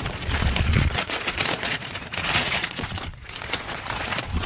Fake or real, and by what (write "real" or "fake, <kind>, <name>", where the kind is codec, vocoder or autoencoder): fake, vocoder, Vocos